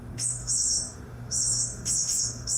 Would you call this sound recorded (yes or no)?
no